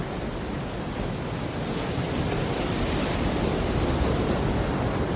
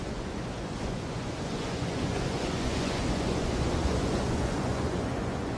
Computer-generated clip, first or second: second